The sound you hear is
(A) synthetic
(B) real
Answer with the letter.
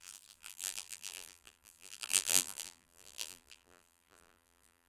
A